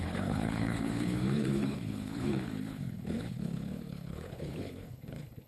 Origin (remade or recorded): remade